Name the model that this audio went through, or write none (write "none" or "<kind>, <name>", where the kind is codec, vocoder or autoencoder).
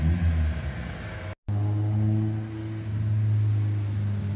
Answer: none